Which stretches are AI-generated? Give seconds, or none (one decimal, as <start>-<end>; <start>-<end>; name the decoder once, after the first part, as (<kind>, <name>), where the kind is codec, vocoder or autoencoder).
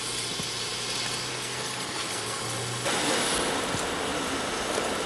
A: 1.3-2.4 (codec, SNAC)